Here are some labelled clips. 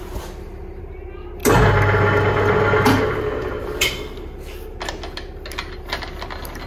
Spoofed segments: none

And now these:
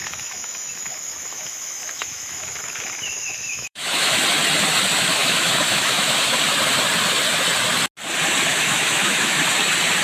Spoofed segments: 0.0-4.1; 5.2-6.4; 8.5-9.4

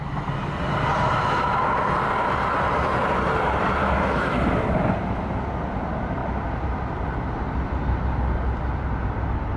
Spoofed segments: 3.8-4.4

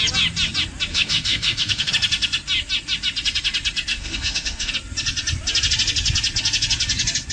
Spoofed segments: 0.9-1.9; 3.9-4.7

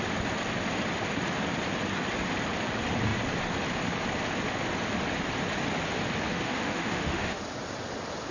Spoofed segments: 6.3-7.4

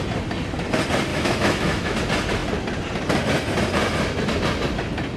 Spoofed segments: 1.1-2.0